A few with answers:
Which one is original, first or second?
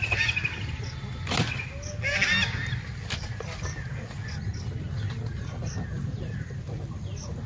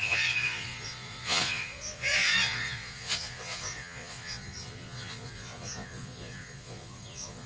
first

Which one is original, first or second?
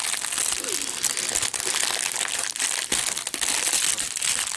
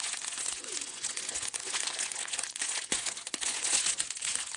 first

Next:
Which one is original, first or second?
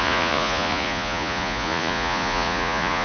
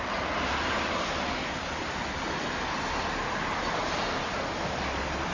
second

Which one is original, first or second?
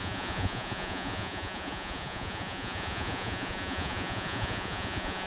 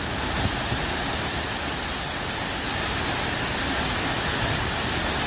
second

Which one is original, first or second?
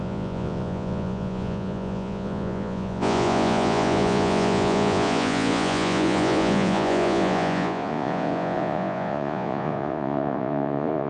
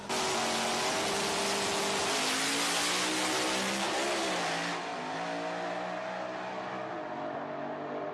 second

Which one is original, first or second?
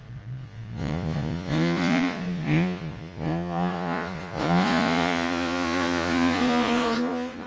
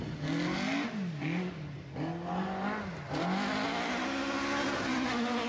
second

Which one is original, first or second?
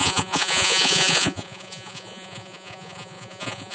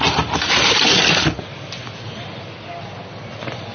second